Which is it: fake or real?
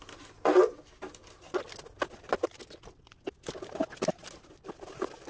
real